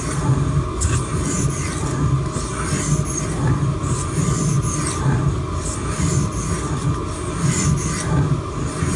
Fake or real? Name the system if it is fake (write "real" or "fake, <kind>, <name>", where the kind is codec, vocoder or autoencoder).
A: real